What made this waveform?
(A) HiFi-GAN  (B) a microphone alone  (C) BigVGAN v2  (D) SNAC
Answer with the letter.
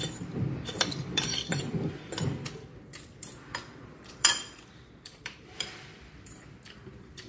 C